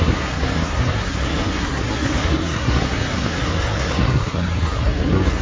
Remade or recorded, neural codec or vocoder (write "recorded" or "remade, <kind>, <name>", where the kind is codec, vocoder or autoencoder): remade, codec, SNAC